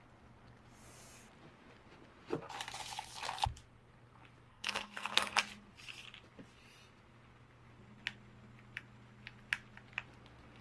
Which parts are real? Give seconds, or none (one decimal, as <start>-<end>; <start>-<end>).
0.0-4.5; 5.4-10.6